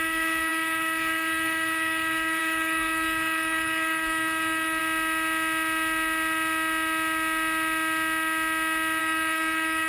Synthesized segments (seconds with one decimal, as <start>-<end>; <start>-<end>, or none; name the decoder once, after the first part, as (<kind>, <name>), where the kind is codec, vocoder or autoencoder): 0.0-4.8 (codec, DAC); 9.0-9.9